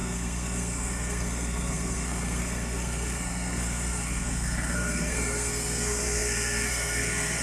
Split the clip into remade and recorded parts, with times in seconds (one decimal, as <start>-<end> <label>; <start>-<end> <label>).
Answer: 0.0-7.4 remade